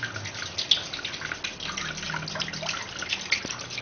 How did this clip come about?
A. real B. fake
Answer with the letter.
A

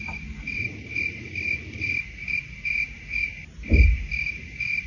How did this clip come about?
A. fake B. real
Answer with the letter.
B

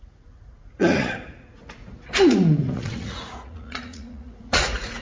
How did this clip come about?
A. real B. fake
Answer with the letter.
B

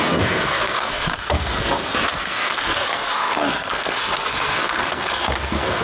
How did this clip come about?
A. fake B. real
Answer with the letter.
A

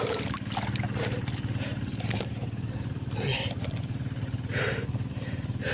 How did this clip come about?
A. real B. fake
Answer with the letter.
A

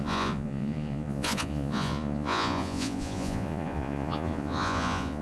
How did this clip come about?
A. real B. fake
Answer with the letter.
B